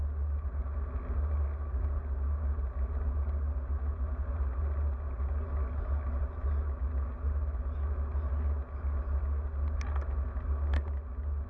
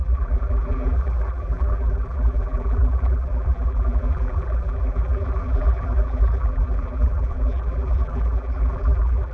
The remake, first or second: second